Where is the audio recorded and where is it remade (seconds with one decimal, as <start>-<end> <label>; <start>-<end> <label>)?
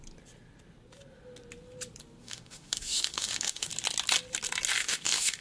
0.0-2.2 recorded; 2.2-3.7 remade; 3.7-4.8 recorded; 4.8-5.4 remade